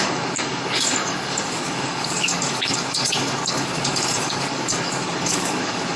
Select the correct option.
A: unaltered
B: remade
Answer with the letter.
B